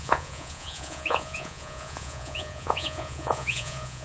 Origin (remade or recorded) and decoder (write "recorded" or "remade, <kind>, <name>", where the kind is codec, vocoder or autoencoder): remade, vocoder, Vocos